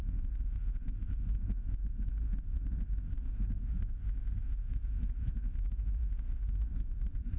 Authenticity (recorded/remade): remade